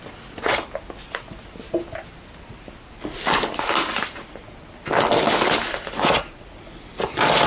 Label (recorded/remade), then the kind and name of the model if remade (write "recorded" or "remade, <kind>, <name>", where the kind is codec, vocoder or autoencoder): recorded